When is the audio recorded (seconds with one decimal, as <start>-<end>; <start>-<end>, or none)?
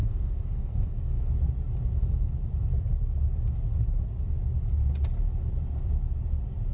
1.3-6.7